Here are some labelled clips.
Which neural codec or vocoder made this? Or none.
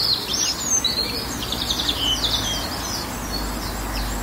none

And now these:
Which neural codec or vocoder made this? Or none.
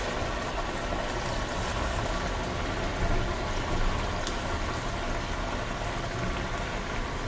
none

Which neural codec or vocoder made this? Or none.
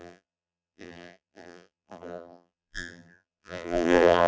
vocoder, BigVGAN v2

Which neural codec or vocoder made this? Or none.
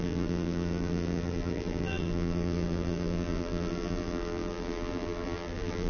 vocoder, BigVGAN v2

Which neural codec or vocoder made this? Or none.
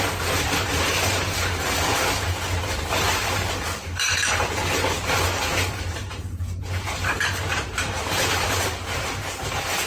vocoder, BigVGAN v2